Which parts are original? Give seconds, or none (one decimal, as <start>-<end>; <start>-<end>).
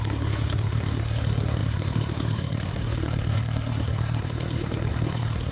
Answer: none